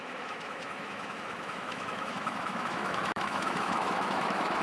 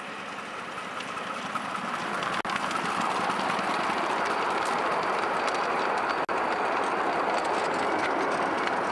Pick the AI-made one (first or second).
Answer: first